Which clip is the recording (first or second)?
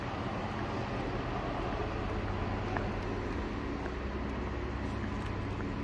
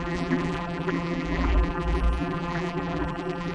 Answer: first